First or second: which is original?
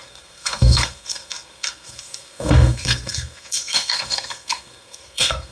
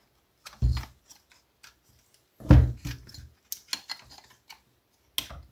second